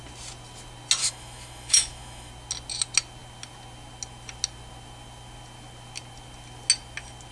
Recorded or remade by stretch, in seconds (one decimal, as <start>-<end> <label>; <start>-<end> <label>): 0.0-1.0 recorded; 1.0-2.3 remade; 2.3-7.3 recorded